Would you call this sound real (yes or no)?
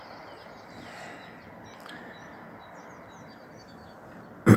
yes